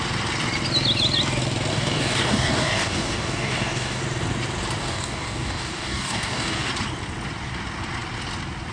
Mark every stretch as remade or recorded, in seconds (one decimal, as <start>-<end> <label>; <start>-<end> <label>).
0.0-1.7 recorded; 1.7-4.0 remade; 4.0-4.8 recorded; 4.8-6.7 remade; 6.7-8.7 recorded